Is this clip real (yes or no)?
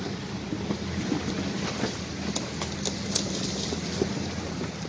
yes